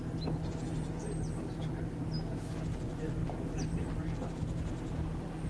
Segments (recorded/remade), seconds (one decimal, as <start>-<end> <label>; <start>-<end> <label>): 0.0-3.2 recorded; 3.2-4.4 remade; 4.4-5.5 recorded